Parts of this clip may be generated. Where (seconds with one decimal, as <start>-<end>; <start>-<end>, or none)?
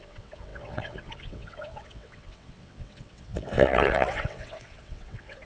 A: 0.0-5.5